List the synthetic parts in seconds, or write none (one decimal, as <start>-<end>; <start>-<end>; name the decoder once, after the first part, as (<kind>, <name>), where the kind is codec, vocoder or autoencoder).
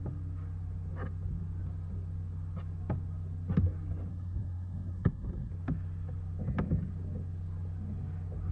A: 4.1-5.5 (codec, SNAC)